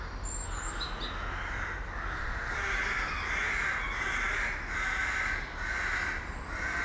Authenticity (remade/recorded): recorded